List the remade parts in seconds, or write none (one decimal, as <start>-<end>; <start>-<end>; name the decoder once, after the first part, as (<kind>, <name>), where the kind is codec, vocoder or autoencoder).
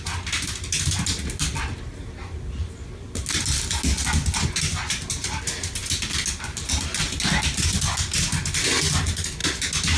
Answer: none